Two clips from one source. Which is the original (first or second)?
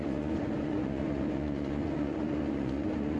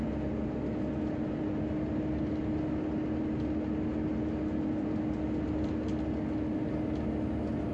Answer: second